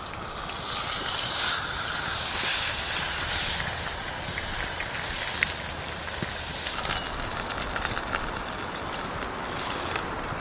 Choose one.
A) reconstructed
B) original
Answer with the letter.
B